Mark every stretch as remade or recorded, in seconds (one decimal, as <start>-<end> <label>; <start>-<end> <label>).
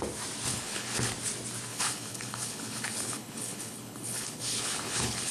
0.0-0.5 recorded; 0.5-1.1 remade; 1.1-1.7 recorded; 1.7-5.3 remade